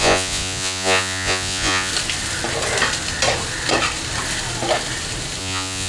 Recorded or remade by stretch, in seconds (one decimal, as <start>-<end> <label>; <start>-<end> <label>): 0.0-1.9 remade; 1.9-5.4 recorded; 5.4-5.9 remade